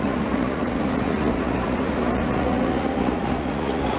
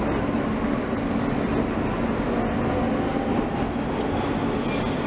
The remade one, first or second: first